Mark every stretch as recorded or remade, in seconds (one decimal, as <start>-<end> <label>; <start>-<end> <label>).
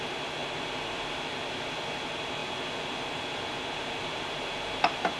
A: 0.0-5.2 recorded